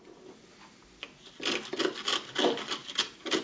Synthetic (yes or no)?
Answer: no